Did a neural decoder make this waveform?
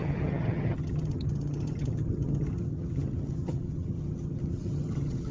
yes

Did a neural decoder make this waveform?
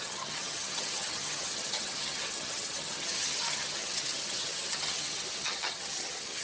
yes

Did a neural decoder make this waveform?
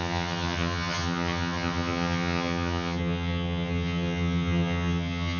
yes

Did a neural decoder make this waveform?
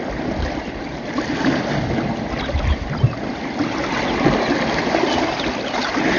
no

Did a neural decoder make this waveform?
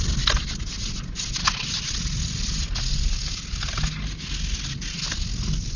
no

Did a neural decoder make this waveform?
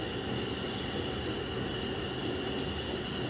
no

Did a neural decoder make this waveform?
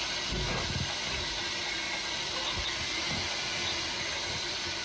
no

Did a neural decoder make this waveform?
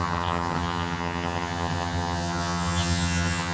yes